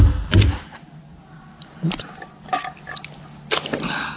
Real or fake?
real